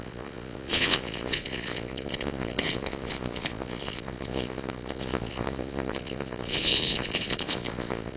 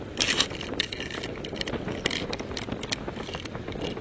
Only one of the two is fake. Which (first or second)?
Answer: first